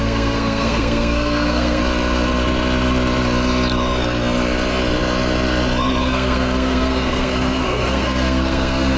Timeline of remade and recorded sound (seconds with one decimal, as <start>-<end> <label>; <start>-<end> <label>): 0.0-1.8 remade; 1.8-6.0 recorded; 6.0-9.0 remade

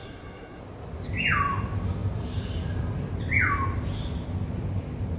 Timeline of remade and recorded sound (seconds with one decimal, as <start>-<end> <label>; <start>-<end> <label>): 0.0-0.6 remade; 0.6-5.2 recorded

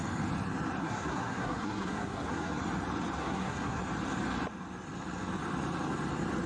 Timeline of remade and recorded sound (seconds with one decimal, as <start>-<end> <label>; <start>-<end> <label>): 0.0-0.8 recorded; 0.8-2.6 remade; 2.6-3.2 recorded; 3.2-3.8 remade; 3.8-6.5 recorded

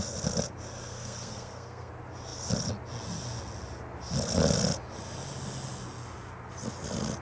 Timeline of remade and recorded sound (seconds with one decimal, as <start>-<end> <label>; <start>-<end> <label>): 0.0-0.9 recorded; 0.9-1.9 remade; 1.9-7.2 recorded

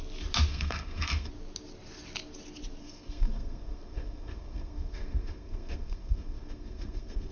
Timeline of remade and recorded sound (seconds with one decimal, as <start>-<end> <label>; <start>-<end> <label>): 0.0-0.5 recorded; 0.5-1.3 remade; 1.3-2.8 recorded; 2.8-7.3 remade